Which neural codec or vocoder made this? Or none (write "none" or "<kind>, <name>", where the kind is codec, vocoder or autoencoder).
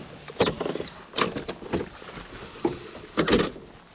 none